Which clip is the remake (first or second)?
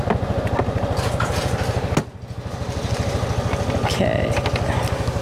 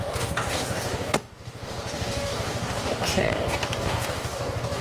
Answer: second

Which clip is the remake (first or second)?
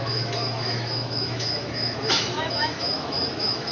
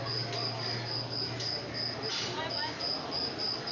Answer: first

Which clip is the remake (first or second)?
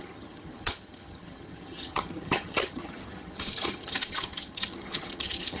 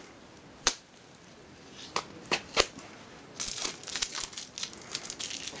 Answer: first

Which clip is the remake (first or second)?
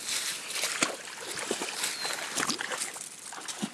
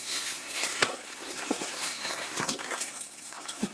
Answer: second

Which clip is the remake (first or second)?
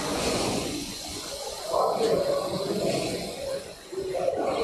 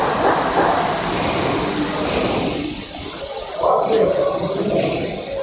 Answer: first